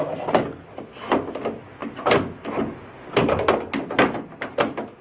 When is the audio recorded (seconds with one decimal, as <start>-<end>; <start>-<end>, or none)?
0.0-5.0